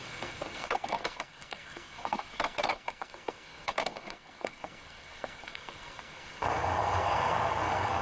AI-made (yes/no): yes